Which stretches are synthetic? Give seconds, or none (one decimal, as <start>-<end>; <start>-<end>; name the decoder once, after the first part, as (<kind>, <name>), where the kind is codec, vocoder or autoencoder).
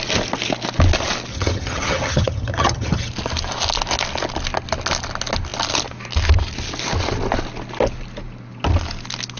1.3-3.1 (vocoder, HiFi-GAN)